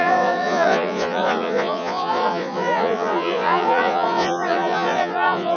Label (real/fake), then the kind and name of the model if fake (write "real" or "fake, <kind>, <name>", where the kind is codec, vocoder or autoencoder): fake, vocoder, Vocos